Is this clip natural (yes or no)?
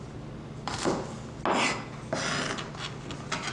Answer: yes